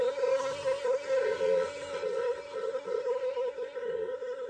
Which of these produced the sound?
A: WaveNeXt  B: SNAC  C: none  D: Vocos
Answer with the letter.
B